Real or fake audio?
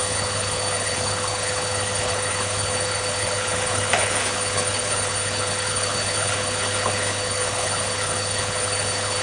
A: fake